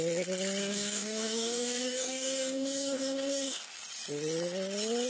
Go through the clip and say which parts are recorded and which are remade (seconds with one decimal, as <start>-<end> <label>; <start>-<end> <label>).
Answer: 0.0-0.6 recorded; 0.6-3.7 remade; 3.7-5.1 recorded